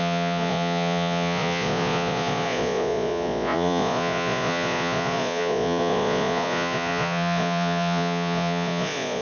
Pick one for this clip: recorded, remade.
remade